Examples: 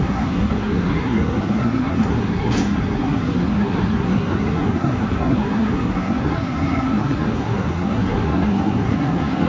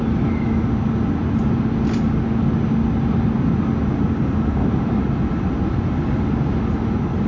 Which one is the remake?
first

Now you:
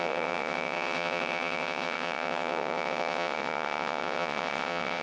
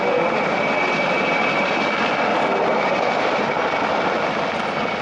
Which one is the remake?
first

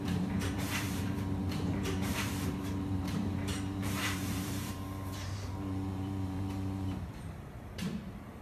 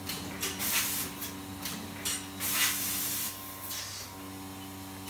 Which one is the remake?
first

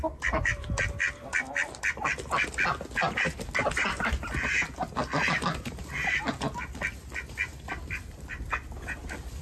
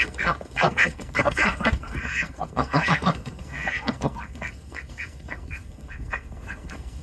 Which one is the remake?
second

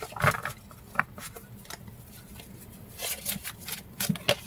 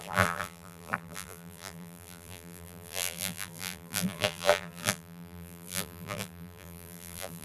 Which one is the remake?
second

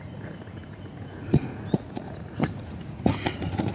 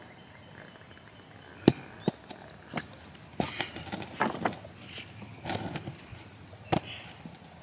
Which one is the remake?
first